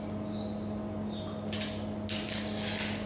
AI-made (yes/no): no